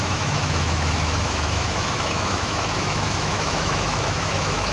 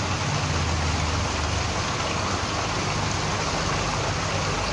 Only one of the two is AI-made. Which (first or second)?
first